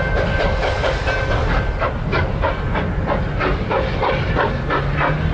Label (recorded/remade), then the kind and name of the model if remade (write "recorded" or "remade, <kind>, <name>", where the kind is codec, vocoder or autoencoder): recorded